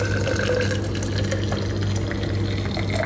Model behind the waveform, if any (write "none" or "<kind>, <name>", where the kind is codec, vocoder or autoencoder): none